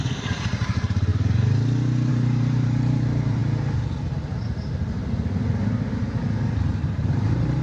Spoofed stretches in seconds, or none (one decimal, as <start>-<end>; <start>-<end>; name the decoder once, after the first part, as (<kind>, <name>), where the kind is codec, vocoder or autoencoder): 0.0-1.1 (vocoder, BigVGAN v2); 2.1-3.4; 6.9-7.6